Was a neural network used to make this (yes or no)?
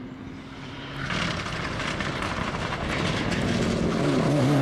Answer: no